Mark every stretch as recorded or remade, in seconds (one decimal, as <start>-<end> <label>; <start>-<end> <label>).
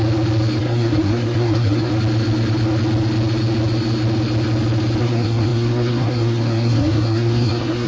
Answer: 0.0-0.6 recorded; 0.6-1.9 remade; 1.9-5.0 recorded; 5.0-7.9 remade